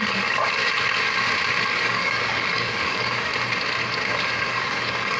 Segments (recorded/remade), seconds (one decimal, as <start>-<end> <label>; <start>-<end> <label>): 0.0-0.6 remade; 0.6-1.6 recorded; 1.6-3.3 remade; 3.3-4.4 recorded; 4.4-5.2 remade